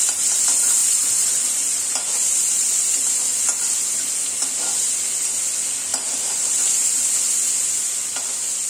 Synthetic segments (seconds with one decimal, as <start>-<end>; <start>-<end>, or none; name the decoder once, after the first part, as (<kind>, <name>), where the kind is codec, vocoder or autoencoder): 0.8-3.1 (vocoder, BigVGAN v2); 5.9-7.0